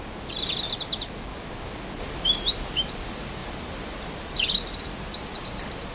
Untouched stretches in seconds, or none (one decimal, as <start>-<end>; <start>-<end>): 0.0-5.9